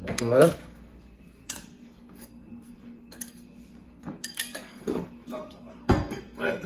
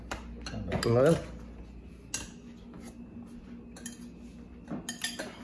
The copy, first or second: first